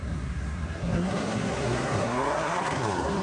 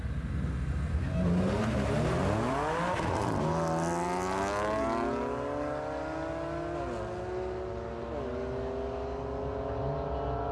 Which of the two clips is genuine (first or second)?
second